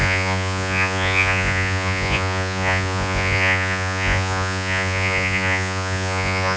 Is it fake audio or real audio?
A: fake